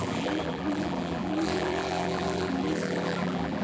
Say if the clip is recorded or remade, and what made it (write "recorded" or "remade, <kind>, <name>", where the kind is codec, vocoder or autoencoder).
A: remade, vocoder, BigVGAN v2